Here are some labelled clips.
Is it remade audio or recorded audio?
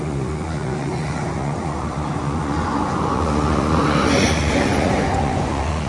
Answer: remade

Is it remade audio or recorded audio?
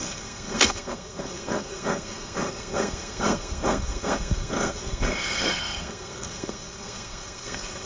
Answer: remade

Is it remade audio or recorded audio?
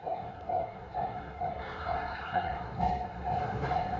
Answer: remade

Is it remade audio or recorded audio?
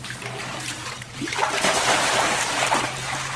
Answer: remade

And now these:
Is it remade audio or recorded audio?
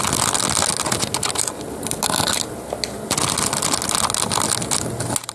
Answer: recorded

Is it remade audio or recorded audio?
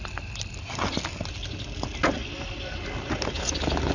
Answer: recorded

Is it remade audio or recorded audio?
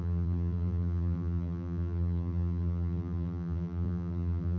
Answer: remade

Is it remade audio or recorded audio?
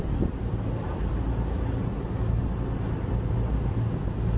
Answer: recorded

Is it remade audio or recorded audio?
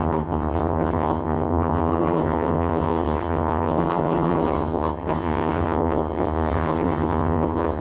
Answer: remade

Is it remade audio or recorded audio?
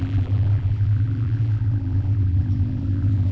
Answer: remade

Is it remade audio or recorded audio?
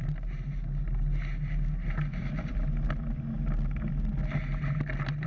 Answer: recorded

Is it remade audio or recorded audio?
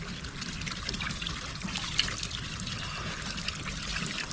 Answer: recorded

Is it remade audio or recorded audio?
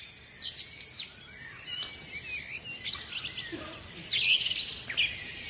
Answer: recorded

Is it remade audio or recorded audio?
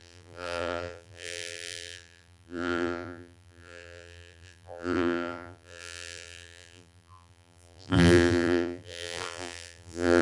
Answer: remade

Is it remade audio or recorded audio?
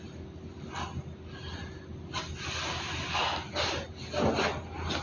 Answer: recorded